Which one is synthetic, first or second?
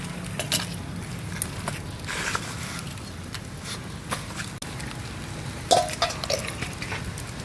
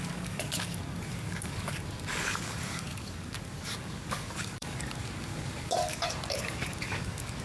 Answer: second